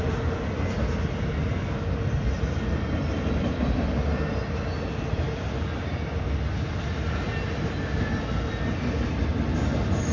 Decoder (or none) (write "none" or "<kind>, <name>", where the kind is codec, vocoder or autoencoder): none